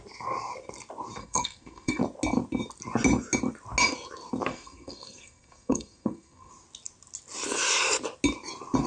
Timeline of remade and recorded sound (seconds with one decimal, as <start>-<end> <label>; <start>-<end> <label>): 0.0-1.2 recorded; 1.2-2.0 remade; 2.0-4.5 recorded; 4.5-6.5 remade; 6.5-8.9 recorded